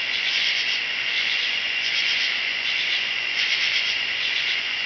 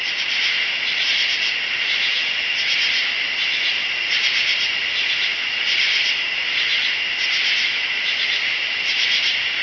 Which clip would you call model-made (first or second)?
first